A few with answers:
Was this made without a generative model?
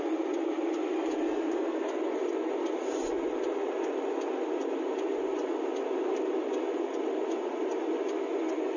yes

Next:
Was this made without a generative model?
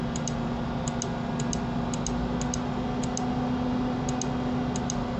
yes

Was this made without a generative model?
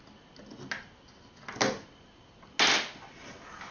yes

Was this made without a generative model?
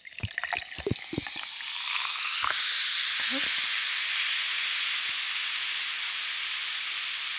yes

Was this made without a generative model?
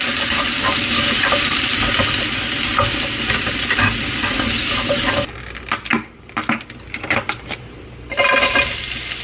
yes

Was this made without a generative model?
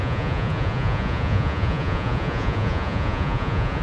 no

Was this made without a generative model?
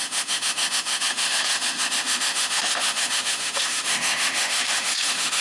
no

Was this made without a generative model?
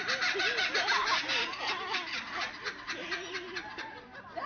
yes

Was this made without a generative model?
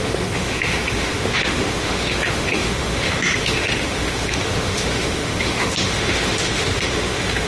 no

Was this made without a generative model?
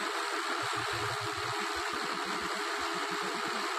yes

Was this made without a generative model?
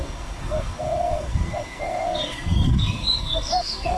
no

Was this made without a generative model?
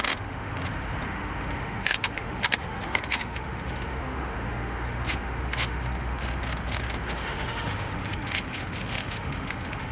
no